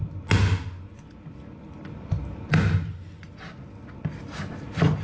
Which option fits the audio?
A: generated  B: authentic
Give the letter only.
B